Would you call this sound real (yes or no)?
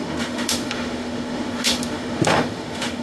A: no